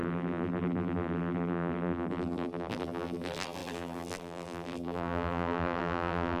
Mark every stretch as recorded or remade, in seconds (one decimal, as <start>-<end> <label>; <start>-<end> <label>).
0.0-6.4 remade